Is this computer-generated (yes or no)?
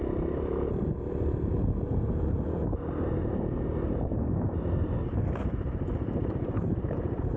yes